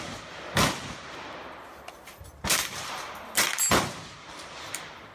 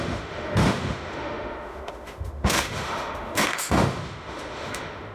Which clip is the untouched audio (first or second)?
first